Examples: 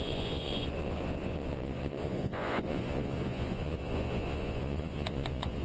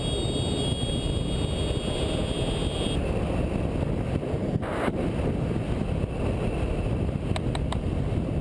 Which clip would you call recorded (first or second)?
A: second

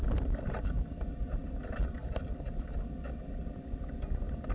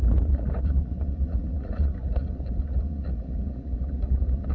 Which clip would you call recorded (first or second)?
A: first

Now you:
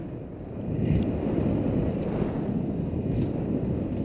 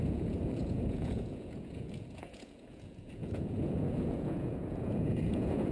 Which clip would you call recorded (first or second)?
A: first